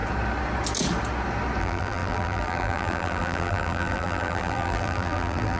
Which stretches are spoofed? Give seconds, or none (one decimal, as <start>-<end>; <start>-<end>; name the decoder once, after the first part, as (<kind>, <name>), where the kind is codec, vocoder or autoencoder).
1.6-5.6 (vocoder, BigVGAN v2)